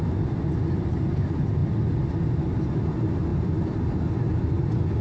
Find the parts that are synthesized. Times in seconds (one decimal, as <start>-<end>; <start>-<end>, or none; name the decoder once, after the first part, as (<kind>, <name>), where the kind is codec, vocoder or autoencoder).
none